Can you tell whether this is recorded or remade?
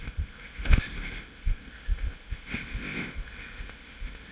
remade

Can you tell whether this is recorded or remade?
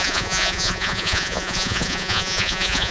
remade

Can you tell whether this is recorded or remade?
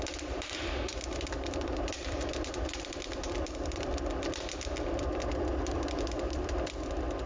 remade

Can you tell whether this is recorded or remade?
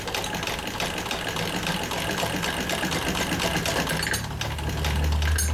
recorded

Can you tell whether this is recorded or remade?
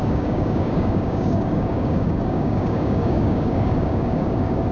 remade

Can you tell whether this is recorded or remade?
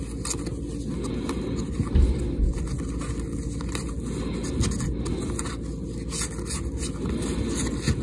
recorded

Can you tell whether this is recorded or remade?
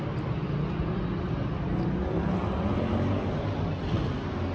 recorded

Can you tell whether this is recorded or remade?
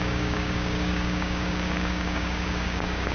remade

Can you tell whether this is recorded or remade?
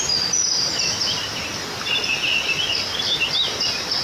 recorded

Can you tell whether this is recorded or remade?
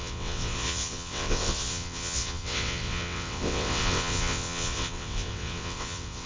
remade